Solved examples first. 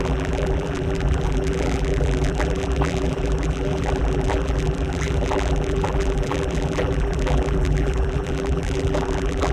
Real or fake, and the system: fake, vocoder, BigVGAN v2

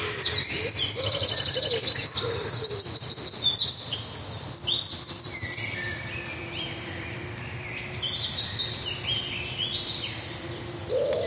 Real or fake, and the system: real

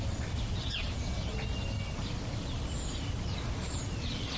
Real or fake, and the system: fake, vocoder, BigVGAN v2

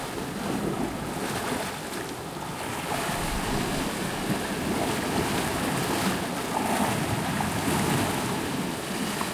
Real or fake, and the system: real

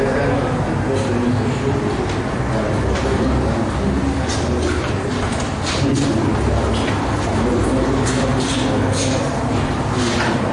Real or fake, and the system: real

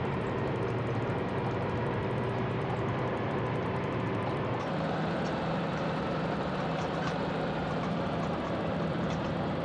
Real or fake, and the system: fake, vocoder, BigVGAN v2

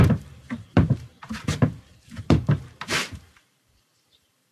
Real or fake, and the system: fake, vocoder, BigVGAN v2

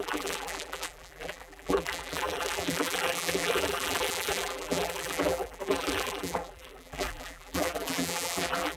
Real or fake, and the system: fake, vocoder, BigVGAN v2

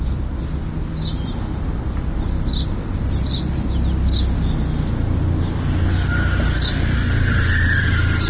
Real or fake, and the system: real